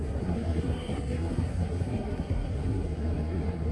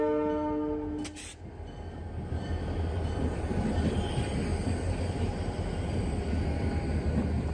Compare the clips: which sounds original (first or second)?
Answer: second